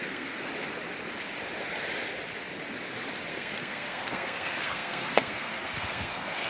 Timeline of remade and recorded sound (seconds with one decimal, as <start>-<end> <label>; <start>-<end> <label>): 0.0-0.5 remade; 0.5-3.3 recorded; 3.3-6.5 remade